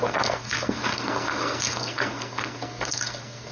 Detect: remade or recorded remade